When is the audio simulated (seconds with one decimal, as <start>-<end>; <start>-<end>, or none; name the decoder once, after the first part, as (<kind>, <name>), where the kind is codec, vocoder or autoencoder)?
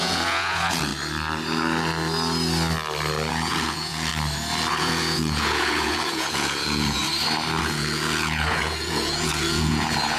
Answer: 0.0-0.9 (vocoder, Vocos); 3.3-4.1; 4.7-7.0; 7.6-10.2